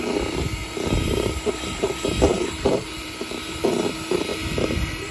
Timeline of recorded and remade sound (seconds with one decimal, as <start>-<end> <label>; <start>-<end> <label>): 0.0-0.6 recorded; 0.6-3.7 remade; 3.7-4.3 recorded; 4.3-5.1 remade